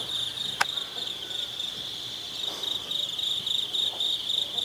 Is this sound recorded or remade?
recorded